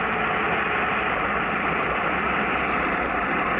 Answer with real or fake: real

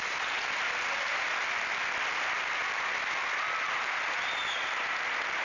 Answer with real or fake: real